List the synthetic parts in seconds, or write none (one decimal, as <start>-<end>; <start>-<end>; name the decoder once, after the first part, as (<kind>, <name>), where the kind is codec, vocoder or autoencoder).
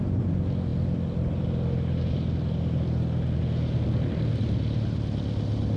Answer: none